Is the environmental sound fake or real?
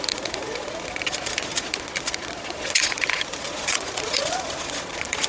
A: fake